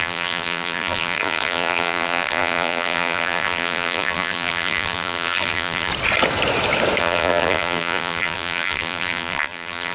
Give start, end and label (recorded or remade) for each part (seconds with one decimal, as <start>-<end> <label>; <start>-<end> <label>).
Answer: 0.0-5.9 remade; 5.9-7.0 recorded; 7.0-9.9 remade